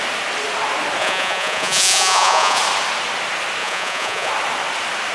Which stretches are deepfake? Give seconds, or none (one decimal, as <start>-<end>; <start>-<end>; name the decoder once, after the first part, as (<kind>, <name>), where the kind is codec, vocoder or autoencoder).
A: 1.0-2.6 (vocoder, Vocos); 3.6-4.3